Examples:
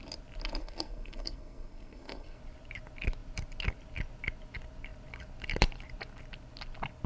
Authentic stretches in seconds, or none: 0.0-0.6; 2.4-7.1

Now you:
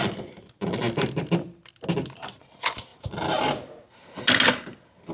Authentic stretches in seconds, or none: 0.0-5.1